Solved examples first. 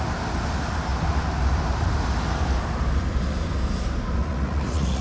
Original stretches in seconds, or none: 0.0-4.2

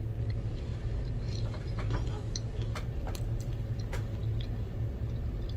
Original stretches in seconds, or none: 0.0-5.6

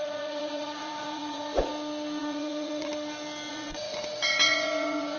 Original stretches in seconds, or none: 1.7-2.2; 2.9-3.5